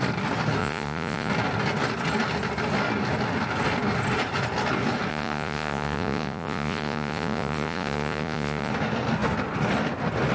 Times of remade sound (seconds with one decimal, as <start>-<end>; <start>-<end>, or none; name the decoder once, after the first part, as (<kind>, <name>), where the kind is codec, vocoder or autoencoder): 0.6-1.3 (vocoder, Vocos); 5.1-8.7